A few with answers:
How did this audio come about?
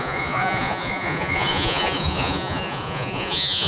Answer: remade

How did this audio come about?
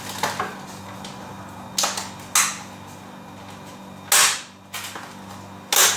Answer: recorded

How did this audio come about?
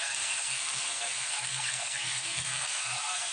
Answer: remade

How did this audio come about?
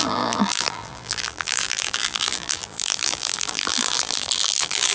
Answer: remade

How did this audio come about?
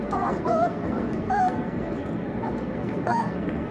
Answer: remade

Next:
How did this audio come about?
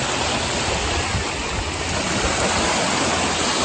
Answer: recorded